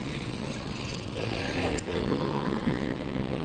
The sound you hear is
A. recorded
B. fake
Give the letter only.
B